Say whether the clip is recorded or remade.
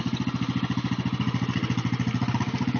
recorded